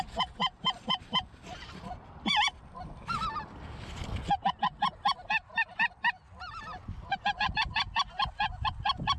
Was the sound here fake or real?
real